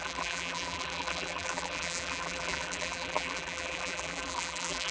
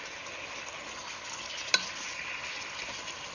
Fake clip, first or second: first